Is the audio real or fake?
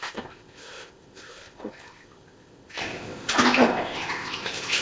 fake